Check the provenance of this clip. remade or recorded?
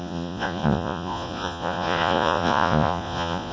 remade